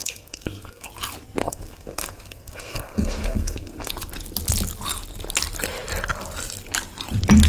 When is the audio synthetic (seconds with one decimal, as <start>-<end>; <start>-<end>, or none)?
0.0-0.9; 1.4-3.9